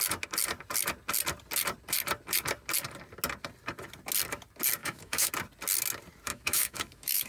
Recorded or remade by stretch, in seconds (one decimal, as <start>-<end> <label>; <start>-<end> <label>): 0.0-4.8 recorded; 4.8-5.3 remade; 5.3-6.3 recorded; 6.3-7.3 remade